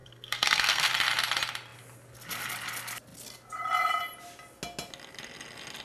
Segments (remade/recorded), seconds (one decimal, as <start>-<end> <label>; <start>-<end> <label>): 0.0-0.9 remade; 0.9-5.8 recorded